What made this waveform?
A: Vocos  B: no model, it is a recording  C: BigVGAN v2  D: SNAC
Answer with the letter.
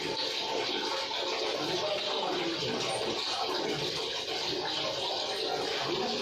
B